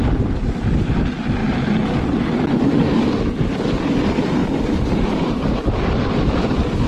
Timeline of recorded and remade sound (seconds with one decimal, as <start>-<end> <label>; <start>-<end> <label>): 0.0-4.4 recorded; 4.4-5.6 remade; 5.6-6.9 recorded